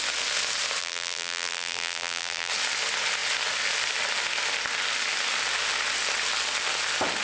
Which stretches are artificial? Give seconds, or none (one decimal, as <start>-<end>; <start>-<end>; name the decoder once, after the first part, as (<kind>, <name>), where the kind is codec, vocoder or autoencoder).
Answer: 0.8-2.5 (vocoder, BigVGAN v2)